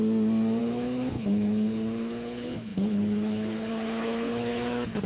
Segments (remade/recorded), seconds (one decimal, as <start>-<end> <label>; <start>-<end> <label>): 0.0-0.6 recorded; 0.6-5.1 remade